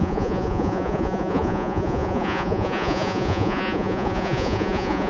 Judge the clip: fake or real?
fake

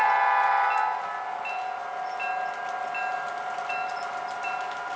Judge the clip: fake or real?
real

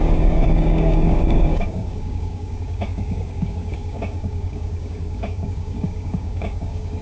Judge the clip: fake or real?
fake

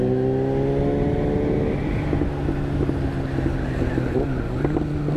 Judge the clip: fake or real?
real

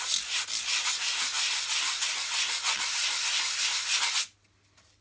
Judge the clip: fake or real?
real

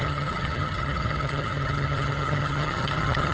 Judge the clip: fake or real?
fake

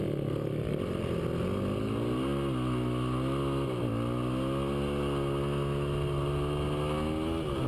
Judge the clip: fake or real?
real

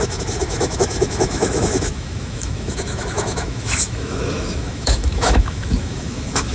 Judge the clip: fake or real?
fake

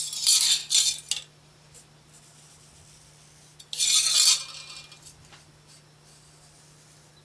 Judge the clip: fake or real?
real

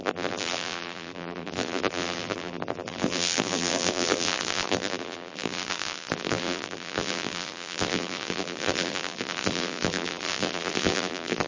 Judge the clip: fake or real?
fake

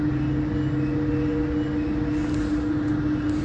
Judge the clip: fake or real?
real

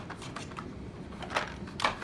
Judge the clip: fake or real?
real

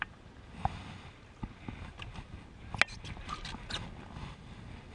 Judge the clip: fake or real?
real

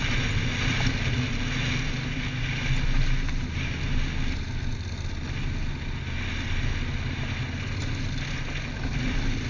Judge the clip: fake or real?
real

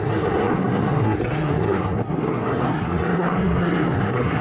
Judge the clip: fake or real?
fake